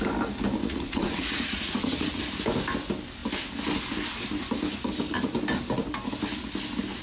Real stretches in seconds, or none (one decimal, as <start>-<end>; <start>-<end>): 0.0-0.6; 2.2-7.0